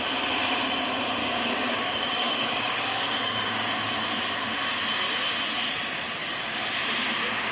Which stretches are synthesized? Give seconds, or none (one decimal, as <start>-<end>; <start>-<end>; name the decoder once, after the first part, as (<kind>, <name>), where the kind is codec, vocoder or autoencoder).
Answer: 1.2-3.9 (codec, DAC); 6.2-6.7